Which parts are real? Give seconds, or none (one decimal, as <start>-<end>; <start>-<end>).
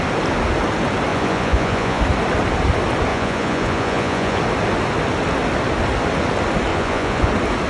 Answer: 0.0-1.1; 2.0-3.1; 4.4-6.7; 7.3-7.7